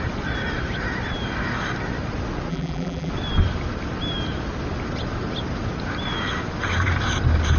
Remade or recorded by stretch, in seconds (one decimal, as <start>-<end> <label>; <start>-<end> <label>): 0.0-2.5 recorded; 2.5-3.1 remade; 3.1-7.6 recorded